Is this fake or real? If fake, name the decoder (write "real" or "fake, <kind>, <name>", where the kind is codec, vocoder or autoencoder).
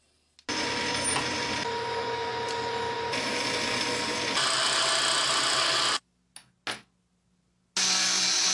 real